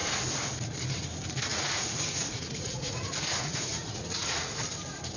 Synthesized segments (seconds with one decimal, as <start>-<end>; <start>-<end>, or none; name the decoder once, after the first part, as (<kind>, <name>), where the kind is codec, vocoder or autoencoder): 1.5-4.6 (vocoder, Vocos)

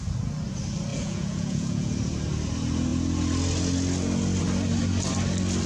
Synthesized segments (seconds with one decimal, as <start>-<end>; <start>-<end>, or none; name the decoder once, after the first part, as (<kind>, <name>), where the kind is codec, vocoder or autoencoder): 0.9-1.9 (vocoder, Vocos)

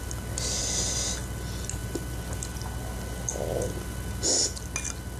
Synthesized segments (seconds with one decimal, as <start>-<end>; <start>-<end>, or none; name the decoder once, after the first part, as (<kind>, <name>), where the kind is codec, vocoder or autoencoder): none

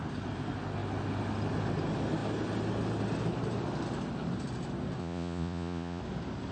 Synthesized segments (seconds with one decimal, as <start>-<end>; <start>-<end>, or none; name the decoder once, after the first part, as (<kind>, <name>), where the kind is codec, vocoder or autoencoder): 5.0-6.0 (vocoder, Vocos)

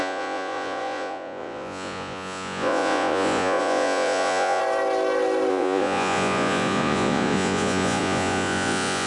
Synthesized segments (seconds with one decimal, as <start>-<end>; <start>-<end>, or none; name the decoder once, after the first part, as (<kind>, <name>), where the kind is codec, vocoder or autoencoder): 0.0-4.6 (vocoder, Vocos); 5.5-9.1

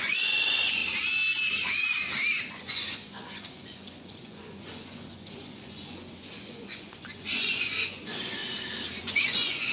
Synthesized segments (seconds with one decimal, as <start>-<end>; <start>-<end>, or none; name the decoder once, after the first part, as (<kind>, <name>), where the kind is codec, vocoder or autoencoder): 0.0-0.8 (vocoder, Vocos); 2.5-8.4; 9.0-9.7

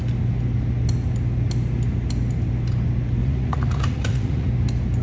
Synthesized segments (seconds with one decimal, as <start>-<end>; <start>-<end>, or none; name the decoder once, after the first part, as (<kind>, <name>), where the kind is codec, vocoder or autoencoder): 3.2-4.5 (vocoder, Vocos)